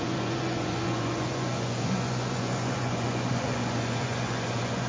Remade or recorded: remade